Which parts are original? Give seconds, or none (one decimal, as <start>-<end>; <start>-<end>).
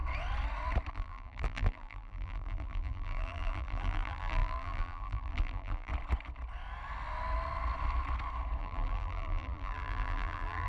0.0-0.9; 5.9-8.6